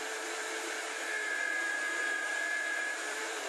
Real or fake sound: fake